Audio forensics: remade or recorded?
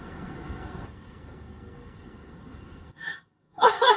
remade